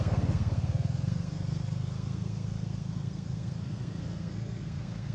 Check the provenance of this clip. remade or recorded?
remade